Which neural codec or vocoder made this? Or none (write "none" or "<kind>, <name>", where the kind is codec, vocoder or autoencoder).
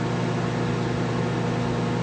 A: none